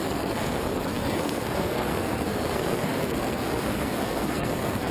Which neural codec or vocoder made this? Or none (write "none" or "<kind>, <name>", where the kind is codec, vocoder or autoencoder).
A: codec, SNAC